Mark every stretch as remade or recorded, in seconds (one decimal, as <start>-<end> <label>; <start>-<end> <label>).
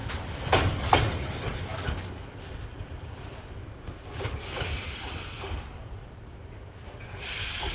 0.0-3.6 recorded; 3.6-4.4 remade; 4.4-7.7 recorded